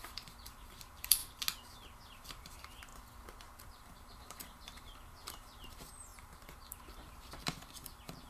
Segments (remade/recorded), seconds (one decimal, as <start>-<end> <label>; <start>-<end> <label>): 0.0-1.2 remade; 1.2-2.1 recorded; 2.1-2.9 remade; 2.9-3.6 recorded; 3.6-8.3 remade